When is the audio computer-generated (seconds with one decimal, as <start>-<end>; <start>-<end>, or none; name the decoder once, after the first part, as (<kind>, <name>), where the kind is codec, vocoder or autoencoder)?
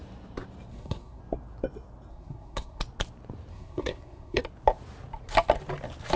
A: 0.7-1.2 (codec, SNAC); 2.1-2.8; 3.5-4.4